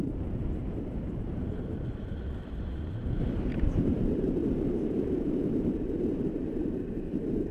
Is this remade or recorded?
remade